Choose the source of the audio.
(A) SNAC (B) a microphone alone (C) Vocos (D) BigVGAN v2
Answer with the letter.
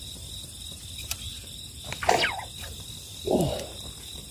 B